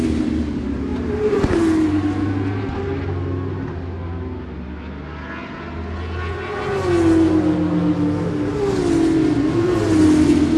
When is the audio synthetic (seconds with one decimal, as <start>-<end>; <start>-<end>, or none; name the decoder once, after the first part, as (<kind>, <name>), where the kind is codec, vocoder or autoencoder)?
0.9-1.6 (vocoder, BigVGAN v2)